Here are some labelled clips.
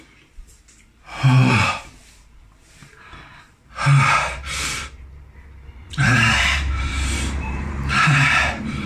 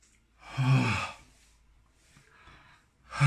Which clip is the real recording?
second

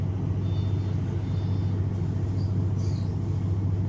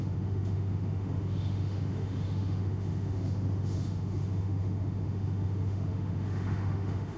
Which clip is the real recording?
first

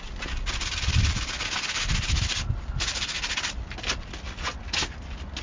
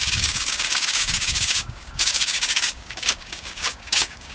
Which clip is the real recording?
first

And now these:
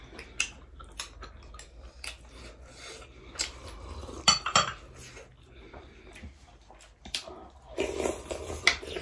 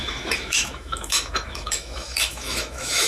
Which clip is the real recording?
first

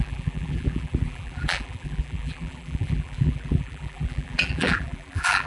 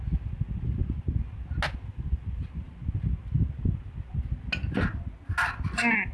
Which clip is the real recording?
second